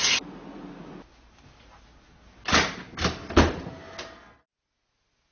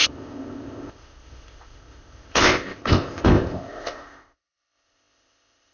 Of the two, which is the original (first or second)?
first